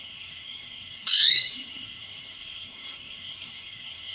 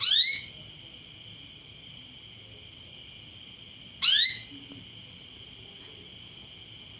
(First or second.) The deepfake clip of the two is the first